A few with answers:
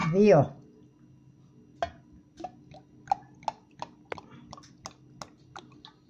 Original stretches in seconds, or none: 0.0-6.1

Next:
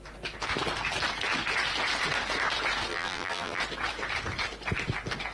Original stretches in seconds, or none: 0.0-2.9; 3.6-5.3

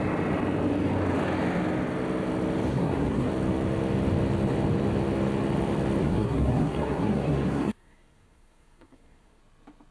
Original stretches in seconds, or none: 0.0-2.7; 3.3-6.0; 9.4-9.9

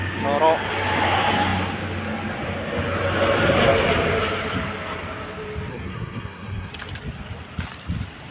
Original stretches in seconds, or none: 0.0-5.7; 6.7-8.3